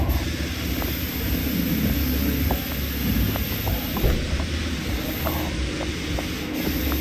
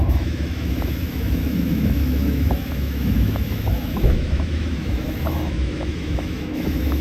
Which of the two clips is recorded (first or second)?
first